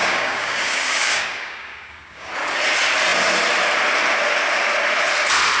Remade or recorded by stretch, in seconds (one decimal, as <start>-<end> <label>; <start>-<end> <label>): 0.0-2.3 remade; 2.3-5.6 recorded